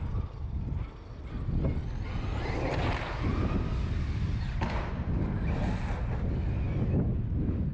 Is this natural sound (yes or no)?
yes